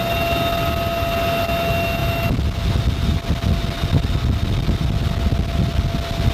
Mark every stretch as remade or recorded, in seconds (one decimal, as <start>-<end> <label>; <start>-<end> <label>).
0.0-6.3 recorded